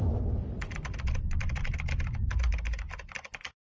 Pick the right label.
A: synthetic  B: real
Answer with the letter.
B